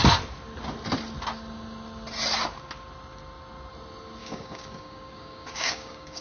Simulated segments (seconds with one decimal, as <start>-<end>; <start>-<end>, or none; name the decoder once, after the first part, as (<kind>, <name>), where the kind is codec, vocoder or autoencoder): 4.2-6.2 (codec, DAC)